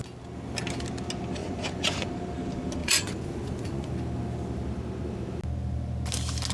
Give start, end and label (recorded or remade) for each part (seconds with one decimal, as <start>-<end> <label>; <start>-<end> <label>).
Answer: 0.0-1.4 recorded; 1.4-2.1 remade; 2.1-2.8 recorded; 2.8-3.9 remade; 3.9-6.5 recorded